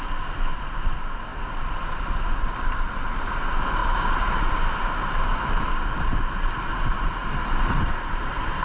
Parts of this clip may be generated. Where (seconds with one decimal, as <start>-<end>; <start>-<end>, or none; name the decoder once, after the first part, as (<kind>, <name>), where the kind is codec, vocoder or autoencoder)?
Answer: 1.3-2.9 (vocoder, BigVGAN v2); 7.2-7.9